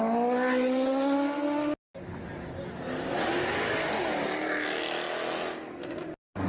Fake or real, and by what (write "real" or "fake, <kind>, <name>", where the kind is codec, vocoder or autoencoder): real